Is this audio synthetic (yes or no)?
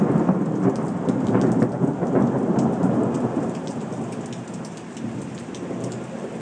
no